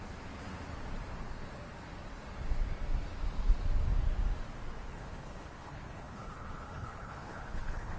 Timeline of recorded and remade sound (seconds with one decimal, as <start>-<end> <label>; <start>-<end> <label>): 0.0-4.9 recorded; 4.9-8.0 remade